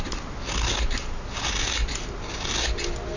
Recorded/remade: recorded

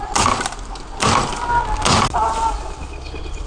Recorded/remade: recorded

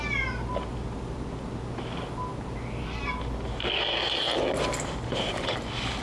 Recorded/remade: recorded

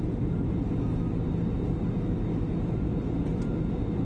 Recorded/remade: recorded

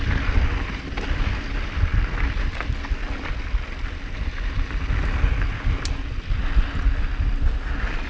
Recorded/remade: recorded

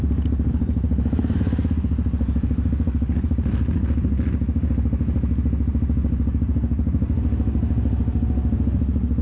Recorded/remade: recorded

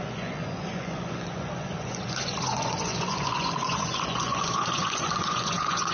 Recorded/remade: remade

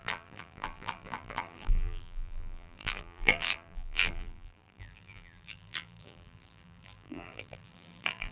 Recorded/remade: remade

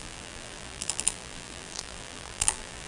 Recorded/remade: remade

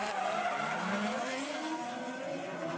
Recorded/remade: recorded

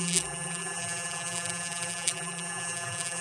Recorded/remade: remade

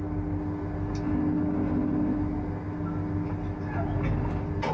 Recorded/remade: recorded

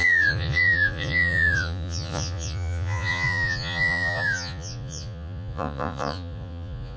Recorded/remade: remade